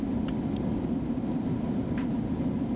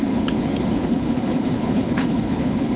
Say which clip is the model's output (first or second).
second